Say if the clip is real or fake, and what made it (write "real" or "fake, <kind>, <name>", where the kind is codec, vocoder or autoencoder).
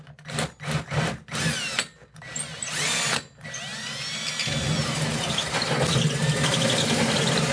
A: real